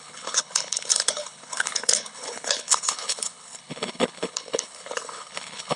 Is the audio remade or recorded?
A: remade